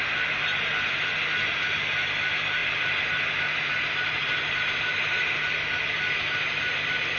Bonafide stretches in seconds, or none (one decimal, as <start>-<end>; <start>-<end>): 0.0-7.2